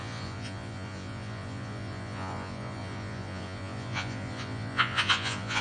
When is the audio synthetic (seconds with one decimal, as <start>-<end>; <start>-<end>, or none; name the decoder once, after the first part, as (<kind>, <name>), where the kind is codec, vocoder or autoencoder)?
0.0-5.6 (vocoder, Vocos)